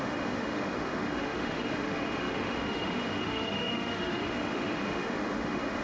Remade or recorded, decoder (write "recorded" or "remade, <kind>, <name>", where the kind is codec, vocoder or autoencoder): remade, autoencoder, DAC-VAE